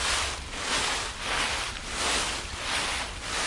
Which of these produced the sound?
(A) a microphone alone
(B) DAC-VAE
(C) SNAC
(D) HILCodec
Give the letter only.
A